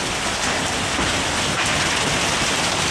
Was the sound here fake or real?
real